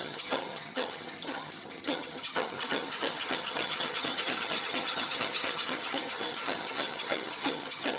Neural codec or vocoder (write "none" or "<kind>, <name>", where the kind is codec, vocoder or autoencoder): vocoder, HiFi-GAN